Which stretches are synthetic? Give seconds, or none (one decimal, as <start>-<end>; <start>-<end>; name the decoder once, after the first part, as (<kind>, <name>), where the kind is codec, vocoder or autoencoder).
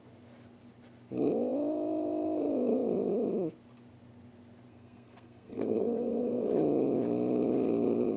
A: 4.7-6.5 (codec, SNAC)